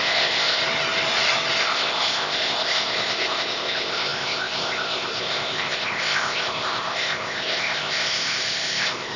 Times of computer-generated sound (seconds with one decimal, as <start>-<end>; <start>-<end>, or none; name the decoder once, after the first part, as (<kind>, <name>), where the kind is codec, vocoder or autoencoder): 0.0-0.6 (codec, ZipCodec); 1.6-9.2